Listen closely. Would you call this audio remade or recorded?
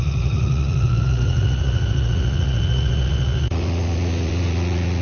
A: remade